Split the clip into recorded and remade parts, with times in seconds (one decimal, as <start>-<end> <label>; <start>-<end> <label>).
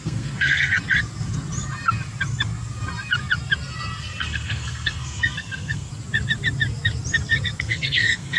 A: 0.0-0.7 remade; 0.7-4.0 recorded; 4.0-5.9 remade; 5.9-7.6 recorded; 7.6-8.4 remade